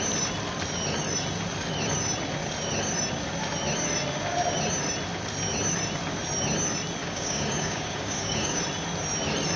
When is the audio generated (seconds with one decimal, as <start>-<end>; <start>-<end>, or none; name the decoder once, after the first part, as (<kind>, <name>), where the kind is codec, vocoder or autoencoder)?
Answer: 7.0-8.6 (codec, DAC)